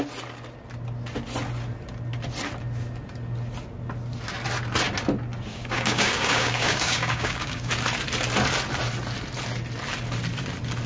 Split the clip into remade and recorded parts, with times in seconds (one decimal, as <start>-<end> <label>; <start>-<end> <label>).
0.0-5.5 recorded; 5.5-7.7 remade; 7.7-10.9 recorded